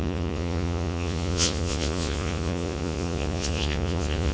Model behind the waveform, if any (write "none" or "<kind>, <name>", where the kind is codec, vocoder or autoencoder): vocoder, Vocos